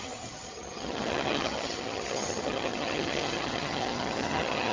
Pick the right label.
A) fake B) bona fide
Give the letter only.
A